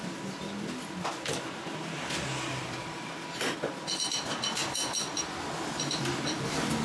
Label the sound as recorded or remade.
recorded